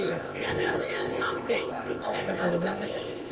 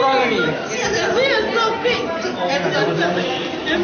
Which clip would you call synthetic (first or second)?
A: first